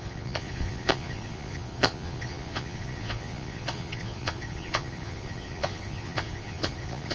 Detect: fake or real fake